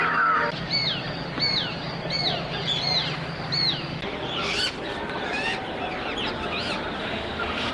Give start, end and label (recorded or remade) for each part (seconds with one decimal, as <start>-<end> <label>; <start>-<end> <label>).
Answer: 0.0-7.0 recorded; 7.0-7.7 remade